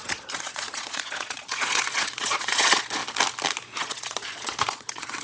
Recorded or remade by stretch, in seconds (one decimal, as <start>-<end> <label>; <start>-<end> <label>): 0.0-3.0 remade; 3.0-3.8 recorded; 3.8-5.2 remade